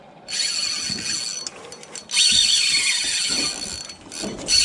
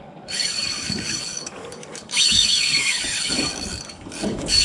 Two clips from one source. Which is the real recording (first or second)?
first